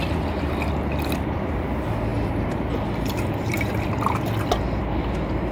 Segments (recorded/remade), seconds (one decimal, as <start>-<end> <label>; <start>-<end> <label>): 0.0-2.1 recorded; 2.1-3.7 remade; 3.7-5.5 recorded